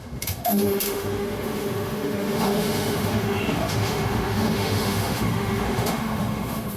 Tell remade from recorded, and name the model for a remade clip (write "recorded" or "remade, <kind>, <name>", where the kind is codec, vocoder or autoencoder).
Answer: remade, autoencoder, DAC-VAE